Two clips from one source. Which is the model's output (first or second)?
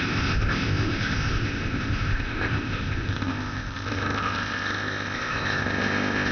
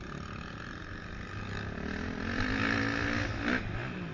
first